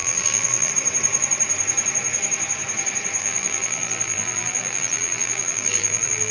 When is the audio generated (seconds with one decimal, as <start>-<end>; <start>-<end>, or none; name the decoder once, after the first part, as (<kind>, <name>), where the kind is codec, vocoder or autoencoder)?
0.0-0.7 (vocoder, BigVGAN v2); 3.2-6.3